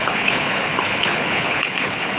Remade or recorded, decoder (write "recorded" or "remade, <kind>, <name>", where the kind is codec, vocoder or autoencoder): remade, codec, HILCodec